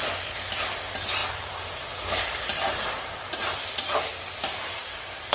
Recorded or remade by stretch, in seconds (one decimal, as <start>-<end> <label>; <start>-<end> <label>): 0.0-5.3 recorded